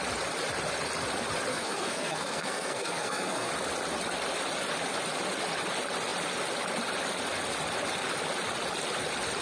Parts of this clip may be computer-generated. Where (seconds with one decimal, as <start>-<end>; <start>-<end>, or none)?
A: 1.5-3.5